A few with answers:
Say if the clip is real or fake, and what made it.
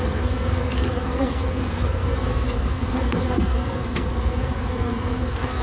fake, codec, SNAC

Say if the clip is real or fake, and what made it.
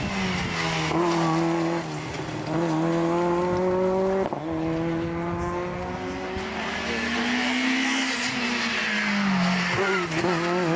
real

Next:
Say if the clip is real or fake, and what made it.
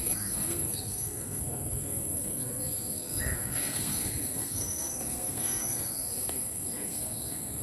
fake, codec, SNAC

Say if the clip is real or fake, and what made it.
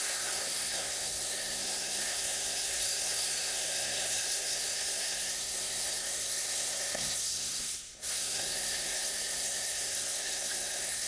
fake, codec, SNAC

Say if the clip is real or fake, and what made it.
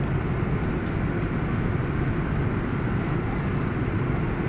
real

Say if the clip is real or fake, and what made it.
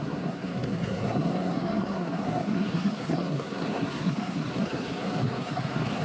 fake, codec, SNAC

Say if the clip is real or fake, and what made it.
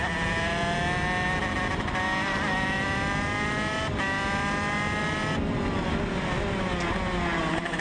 real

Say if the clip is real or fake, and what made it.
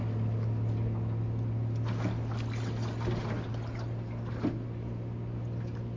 real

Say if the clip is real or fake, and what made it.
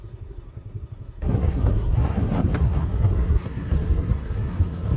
fake, codec, SNAC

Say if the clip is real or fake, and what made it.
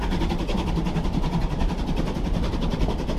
real